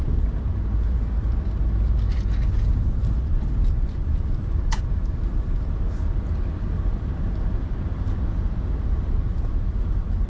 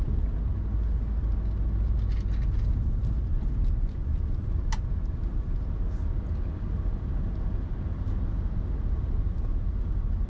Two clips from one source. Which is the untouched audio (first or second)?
second